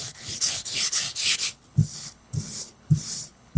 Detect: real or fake fake